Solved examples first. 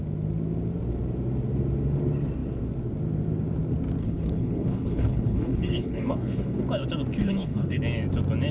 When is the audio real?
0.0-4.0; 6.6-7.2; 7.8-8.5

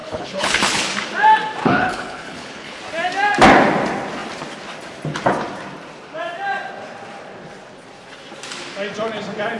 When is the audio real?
0.8-1.6; 2.8-9.6

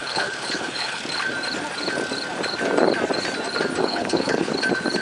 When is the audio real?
1.0-3.8; 4.5-5.0

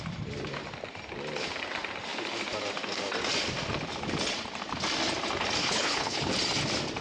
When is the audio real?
0.0-5.6; 6.3-7.0

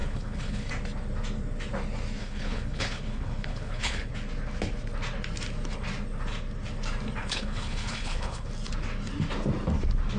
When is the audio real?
0.7-2.2; 4.1-7.2; 8.5-10.2